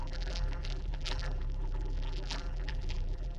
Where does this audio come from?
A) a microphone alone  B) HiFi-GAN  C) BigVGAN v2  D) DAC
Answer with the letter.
C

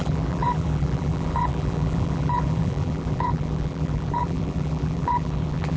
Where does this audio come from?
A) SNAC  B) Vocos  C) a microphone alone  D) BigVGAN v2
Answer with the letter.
D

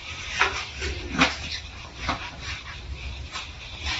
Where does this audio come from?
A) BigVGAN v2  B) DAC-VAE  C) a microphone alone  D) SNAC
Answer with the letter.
A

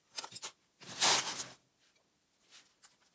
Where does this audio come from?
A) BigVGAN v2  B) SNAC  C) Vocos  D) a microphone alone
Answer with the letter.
D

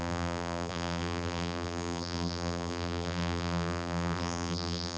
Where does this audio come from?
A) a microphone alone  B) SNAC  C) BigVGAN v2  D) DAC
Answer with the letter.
C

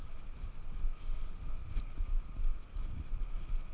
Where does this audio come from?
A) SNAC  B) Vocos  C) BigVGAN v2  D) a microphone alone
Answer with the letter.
D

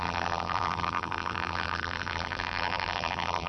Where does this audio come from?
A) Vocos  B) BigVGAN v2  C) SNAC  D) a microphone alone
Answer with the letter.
B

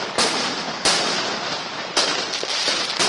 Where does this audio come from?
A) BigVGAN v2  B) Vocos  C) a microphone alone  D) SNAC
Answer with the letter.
A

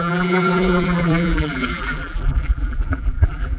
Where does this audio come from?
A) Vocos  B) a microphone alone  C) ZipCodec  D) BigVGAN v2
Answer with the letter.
D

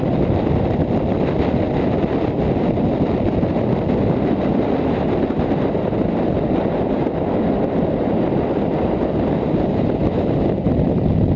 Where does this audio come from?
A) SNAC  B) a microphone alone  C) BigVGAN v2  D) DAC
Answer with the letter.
C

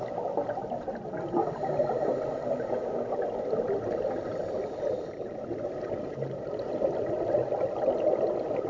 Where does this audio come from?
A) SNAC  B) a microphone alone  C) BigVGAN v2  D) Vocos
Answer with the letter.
B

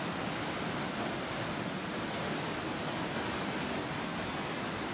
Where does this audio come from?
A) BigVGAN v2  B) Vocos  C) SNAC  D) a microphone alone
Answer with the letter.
D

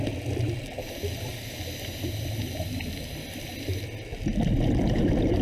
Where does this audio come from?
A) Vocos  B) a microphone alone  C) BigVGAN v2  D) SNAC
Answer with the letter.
B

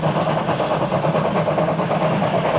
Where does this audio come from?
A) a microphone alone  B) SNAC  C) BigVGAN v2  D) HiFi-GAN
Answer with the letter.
A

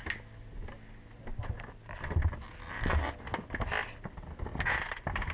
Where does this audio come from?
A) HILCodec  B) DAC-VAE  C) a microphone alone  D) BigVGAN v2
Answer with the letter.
C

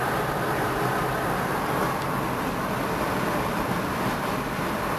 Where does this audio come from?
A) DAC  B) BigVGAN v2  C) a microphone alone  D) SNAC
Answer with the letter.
B